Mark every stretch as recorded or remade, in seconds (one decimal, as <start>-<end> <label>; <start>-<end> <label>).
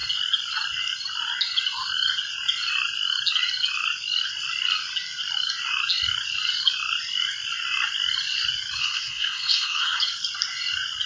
0.0-8.8 recorded; 8.8-10.0 remade; 10.0-11.1 recorded